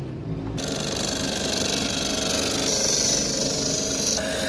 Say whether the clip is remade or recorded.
recorded